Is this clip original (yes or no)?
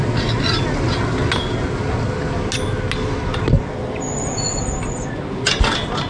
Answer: yes